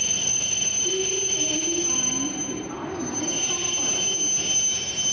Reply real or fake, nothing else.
real